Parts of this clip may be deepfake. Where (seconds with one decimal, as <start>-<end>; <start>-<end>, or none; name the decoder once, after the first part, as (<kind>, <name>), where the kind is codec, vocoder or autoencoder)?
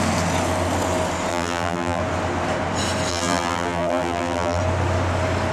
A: 1.3-2.0 (vocoder, BigVGAN v2); 3.1-4.6